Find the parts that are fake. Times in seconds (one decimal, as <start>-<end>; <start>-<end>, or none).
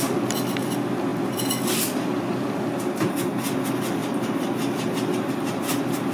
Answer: none